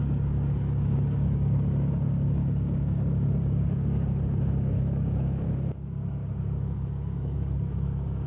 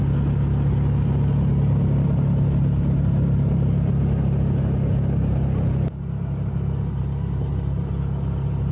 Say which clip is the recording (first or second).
second